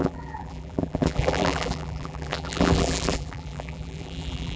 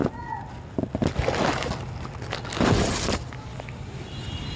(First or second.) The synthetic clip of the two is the first